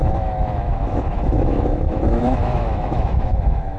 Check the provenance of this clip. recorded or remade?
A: remade